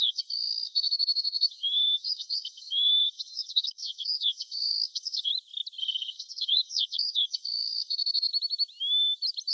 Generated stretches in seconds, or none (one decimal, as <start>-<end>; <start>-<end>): 0.0-5.3; 5.8-8.3